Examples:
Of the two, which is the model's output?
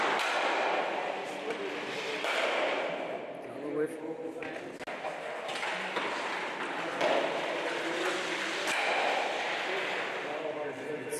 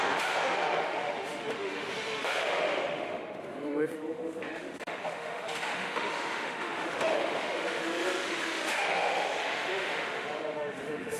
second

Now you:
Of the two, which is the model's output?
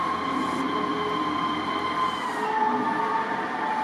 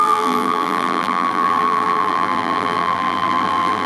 second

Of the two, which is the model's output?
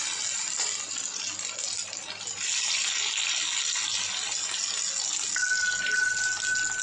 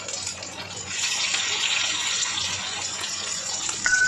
second